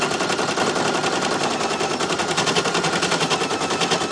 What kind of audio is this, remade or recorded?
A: recorded